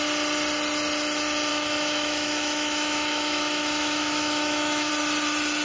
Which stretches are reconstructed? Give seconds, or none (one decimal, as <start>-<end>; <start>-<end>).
1.5-4.9